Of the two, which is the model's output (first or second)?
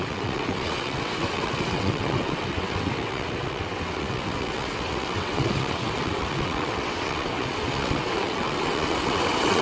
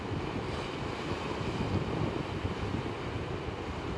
first